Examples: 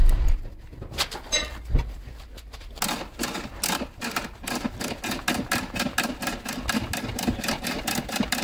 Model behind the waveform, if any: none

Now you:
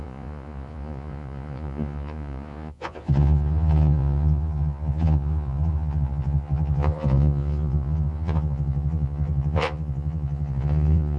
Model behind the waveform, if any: vocoder, Vocos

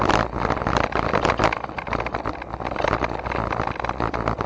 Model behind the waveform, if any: none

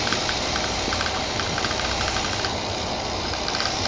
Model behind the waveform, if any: vocoder, BigVGAN v2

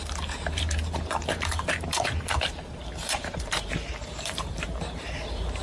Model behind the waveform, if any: vocoder, BigVGAN v2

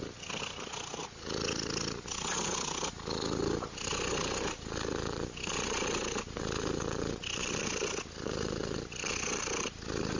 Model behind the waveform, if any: none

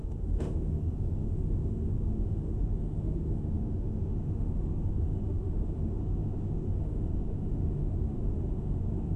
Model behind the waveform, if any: autoencoder, DAC-VAE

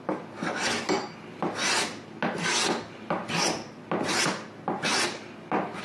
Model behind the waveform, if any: none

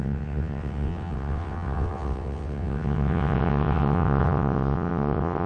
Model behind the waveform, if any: vocoder, WaveNeXt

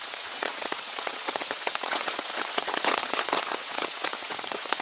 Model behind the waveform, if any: vocoder, WaveNeXt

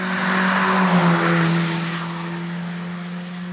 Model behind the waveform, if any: none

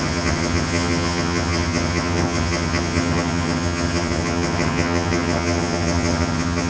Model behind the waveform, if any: vocoder, HiFi-GAN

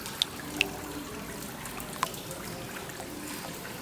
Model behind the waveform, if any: none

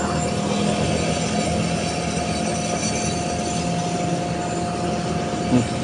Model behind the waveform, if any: none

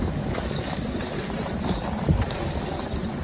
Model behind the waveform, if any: none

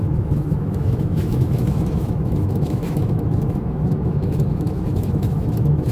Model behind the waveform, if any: autoencoder, DAC-VAE